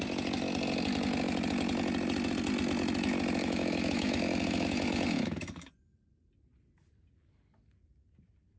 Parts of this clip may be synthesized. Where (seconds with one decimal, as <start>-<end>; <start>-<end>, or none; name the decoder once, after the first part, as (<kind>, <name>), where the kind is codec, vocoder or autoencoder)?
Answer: 3.4-5.7 (autoencoder, DAC-VAE)